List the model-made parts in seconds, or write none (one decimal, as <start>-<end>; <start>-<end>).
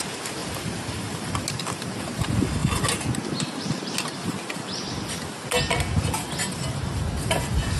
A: 0.4-1.3